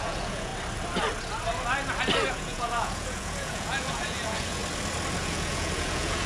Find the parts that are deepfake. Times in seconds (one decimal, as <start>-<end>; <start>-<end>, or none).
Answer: 0.0-0.5; 2.3-4.6; 5.2-6.3